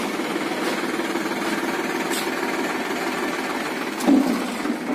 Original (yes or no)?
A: yes